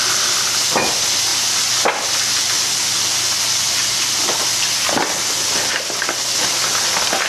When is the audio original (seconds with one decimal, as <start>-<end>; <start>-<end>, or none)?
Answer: 0.0-7.3